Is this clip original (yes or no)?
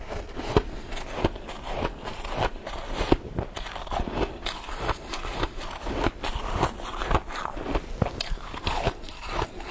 yes